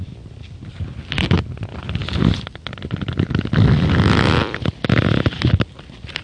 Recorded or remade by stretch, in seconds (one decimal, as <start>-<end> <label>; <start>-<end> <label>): 0.0-6.2 recorded